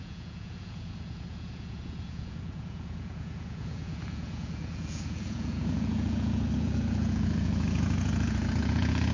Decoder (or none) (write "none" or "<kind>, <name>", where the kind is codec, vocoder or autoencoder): vocoder, Vocos